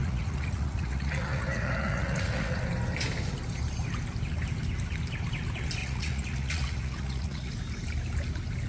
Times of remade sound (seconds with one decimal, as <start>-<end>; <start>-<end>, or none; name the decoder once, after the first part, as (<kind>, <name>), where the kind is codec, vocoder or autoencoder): 0.0-2.6 (vocoder, Vocos); 5.8-7.5